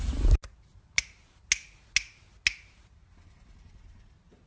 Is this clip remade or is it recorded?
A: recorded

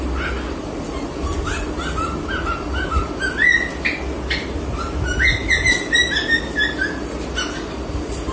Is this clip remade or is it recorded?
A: recorded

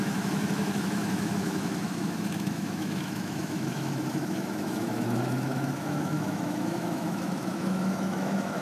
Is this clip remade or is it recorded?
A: remade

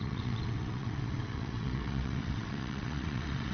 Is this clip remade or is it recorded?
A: remade